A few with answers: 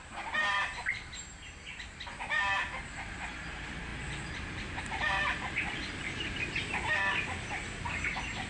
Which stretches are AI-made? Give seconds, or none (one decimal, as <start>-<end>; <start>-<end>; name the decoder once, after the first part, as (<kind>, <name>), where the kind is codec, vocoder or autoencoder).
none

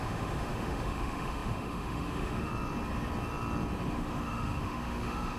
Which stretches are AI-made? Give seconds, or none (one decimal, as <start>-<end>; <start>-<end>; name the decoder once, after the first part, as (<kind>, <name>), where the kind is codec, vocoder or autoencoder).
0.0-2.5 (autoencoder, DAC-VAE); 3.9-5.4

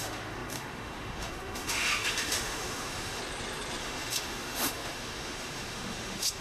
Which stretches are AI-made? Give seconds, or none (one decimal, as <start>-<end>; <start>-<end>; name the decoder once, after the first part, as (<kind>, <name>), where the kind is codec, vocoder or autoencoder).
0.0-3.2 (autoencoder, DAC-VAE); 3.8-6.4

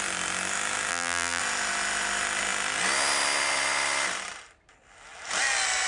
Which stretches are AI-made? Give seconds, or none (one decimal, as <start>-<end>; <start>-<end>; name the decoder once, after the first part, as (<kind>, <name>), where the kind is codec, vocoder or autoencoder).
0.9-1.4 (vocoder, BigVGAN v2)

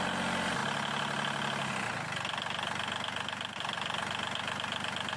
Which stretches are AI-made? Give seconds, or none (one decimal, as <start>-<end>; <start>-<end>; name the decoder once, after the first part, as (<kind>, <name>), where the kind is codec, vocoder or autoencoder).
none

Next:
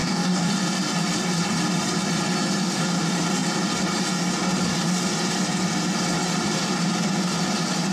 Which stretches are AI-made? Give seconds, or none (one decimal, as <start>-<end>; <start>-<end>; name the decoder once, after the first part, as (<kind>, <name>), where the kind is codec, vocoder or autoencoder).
0.0-0.5 (codec, DAC)

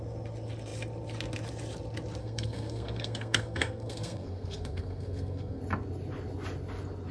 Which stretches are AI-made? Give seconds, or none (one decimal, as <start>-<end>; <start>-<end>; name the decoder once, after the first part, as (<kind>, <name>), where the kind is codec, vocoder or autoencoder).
2.2-5.6 (codec, SNAC)

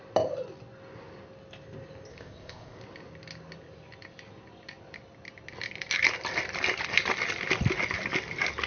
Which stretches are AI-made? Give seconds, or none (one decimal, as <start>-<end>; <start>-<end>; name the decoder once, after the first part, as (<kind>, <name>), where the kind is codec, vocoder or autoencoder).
2.1-2.8 (codec, ZipCodec)